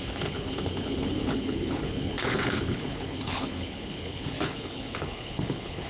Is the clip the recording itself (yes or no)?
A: no